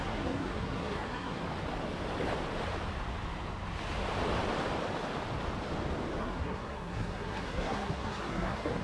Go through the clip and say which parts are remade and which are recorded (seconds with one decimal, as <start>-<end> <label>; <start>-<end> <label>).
0.0-1.4 remade; 1.4-6.2 recorded; 6.2-8.8 remade